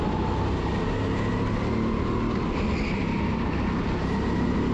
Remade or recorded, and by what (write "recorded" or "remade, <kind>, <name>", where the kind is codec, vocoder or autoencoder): recorded